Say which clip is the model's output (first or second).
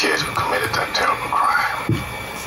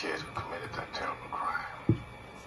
first